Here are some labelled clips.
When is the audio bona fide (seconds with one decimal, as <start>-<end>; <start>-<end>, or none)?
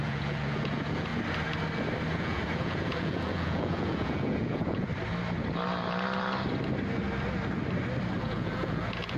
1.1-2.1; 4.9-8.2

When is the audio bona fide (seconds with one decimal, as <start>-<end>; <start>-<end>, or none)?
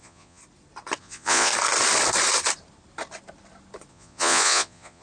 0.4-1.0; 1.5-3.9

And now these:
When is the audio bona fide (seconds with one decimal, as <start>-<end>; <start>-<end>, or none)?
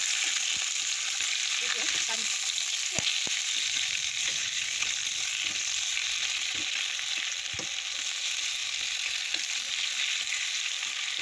0.0-4.3; 4.9-11.2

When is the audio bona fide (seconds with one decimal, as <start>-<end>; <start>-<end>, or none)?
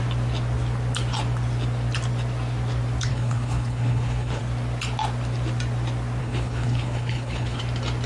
0.0-3.1; 4.4-6.2; 7.6-8.1